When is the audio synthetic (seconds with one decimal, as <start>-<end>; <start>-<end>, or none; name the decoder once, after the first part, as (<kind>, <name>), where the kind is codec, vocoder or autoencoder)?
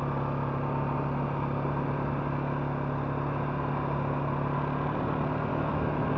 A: 5.5-6.2 (autoencoder, DAC-VAE)